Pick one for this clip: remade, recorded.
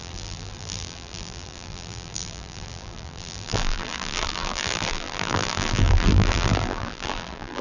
remade